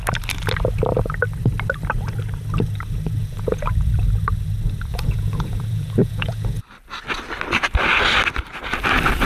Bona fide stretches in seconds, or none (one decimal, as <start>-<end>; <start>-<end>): 0.0-3.2; 3.7-4.9; 6.6-9.2